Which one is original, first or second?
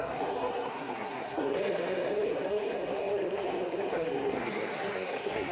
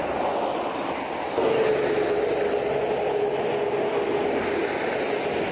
second